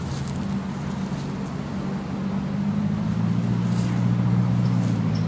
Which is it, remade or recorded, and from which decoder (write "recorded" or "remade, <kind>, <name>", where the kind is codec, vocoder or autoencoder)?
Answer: recorded